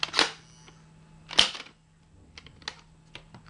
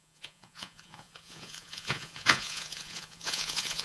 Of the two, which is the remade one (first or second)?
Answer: second